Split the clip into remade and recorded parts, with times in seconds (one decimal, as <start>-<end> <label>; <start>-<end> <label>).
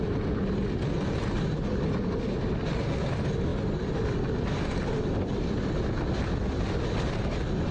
0.0-7.7 recorded